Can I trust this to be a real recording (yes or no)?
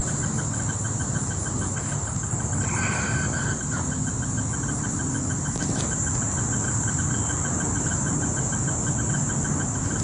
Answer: yes